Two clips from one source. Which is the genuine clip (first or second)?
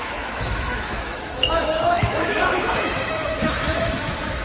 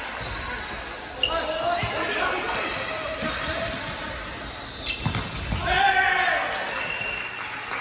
second